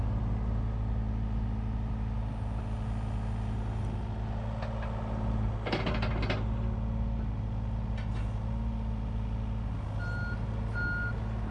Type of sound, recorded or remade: recorded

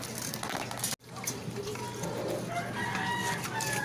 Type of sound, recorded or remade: recorded